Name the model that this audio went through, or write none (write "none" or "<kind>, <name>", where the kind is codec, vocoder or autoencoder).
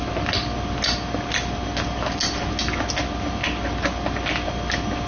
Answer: none